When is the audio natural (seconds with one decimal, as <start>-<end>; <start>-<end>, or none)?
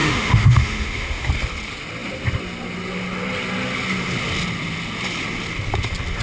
1.3-6.2